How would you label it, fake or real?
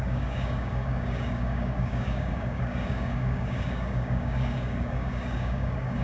fake